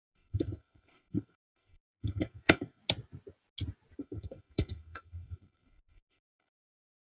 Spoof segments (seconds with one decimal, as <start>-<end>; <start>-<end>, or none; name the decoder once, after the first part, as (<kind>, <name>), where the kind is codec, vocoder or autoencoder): 0.0-2.8 (codec, SNAC); 4.0-7.1